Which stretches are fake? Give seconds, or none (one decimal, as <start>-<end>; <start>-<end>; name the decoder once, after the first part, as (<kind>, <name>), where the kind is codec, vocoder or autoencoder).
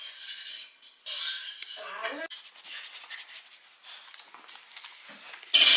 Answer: 0.5-1.0 (codec, ZipCodec)